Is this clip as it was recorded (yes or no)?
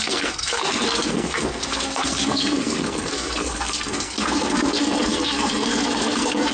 no